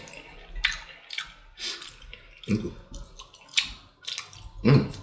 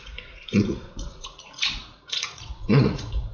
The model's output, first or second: second